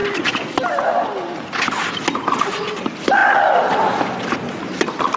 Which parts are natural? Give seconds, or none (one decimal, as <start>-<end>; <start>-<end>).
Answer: 0.0-5.2